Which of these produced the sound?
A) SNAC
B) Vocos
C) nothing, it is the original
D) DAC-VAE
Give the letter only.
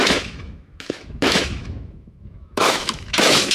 D